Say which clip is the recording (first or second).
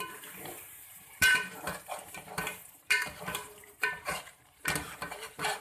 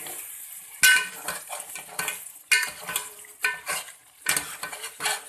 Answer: second